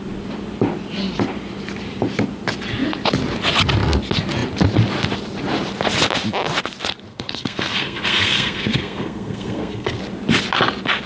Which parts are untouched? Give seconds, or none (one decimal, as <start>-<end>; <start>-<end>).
0.0-7.1; 10.0-11.1

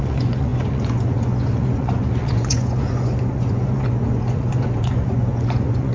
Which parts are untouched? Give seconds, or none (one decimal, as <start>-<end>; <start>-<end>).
none

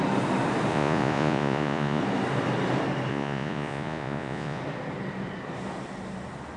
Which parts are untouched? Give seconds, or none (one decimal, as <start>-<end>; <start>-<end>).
0.0-0.7; 2.0-3.1; 4.6-6.6

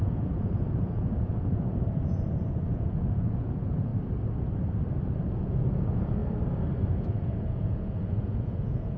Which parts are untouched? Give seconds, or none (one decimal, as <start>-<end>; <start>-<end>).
3.9-5.3; 6.2-7.1